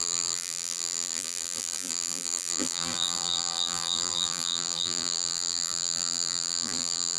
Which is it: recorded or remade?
remade